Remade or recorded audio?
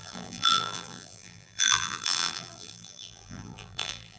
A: remade